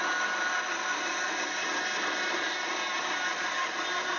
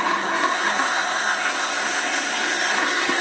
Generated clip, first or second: second